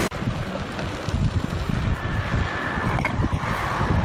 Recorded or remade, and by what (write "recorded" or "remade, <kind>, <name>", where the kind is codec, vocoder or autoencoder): recorded